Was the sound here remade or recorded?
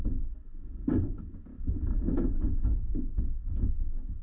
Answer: recorded